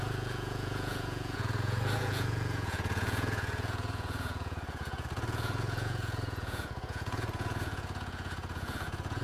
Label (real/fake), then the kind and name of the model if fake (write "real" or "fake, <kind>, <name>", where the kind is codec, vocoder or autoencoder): fake, vocoder, Vocos